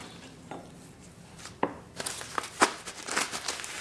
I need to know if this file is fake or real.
real